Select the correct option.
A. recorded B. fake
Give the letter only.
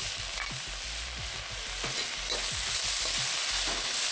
A